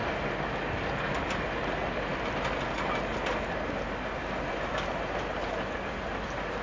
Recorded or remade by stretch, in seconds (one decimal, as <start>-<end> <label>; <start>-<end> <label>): 0.0-6.6 recorded